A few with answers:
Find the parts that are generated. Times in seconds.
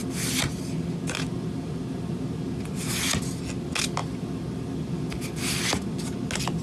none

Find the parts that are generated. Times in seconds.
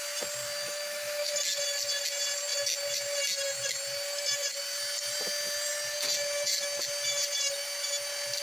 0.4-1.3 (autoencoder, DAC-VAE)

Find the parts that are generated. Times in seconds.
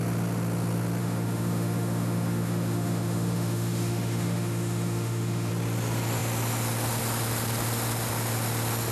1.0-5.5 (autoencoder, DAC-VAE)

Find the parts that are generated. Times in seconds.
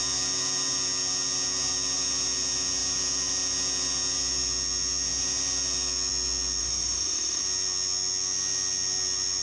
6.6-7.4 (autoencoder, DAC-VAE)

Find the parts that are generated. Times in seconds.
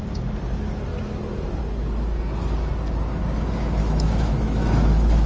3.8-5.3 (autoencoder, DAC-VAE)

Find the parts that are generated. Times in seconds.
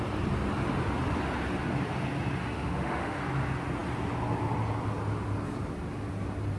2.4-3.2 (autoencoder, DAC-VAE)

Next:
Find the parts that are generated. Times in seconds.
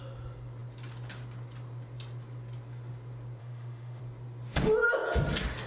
3.4-4.0 (autoencoder, DAC-VAE)